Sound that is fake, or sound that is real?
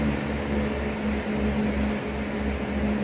real